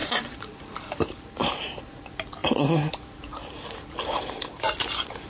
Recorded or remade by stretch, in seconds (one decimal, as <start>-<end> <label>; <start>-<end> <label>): 0.0-1.9 remade; 1.9-2.4 recorded; 2.4-5.3 remade